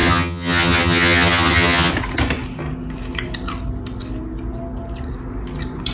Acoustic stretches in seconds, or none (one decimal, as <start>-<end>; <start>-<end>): 1.9-5.9